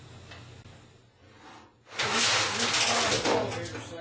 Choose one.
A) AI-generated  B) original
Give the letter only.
B